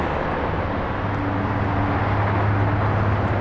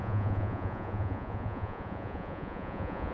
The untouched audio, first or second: first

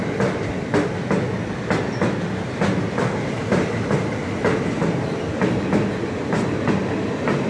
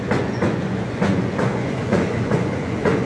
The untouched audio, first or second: first